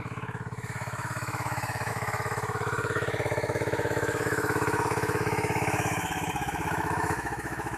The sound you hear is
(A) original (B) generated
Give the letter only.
B